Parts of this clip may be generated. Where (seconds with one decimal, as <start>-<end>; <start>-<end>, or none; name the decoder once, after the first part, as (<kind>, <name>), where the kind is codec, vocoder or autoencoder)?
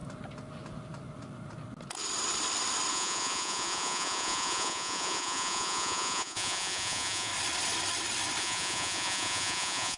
2.9-7.3 (vocoder, Vocos); 8.4-10.0